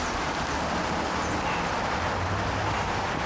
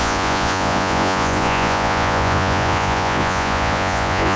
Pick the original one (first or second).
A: first